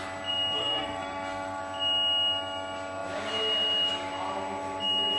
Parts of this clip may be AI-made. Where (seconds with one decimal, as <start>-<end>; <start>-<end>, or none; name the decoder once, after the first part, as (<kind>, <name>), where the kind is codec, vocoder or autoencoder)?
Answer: 0.6-1.6 (codec, SNAC)